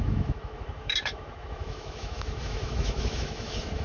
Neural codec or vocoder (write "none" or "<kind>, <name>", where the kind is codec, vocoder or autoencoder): autoencoder, DAC-VAE